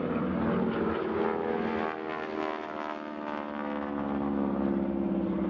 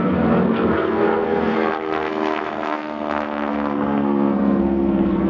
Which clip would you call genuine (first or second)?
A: first